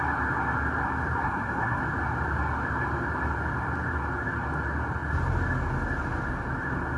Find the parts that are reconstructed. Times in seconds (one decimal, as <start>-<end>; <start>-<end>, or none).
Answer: 1.2-1.8